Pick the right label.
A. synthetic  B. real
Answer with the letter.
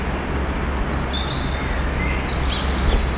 B